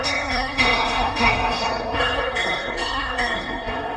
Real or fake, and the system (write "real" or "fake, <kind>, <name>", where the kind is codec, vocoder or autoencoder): fake, codec, SNAC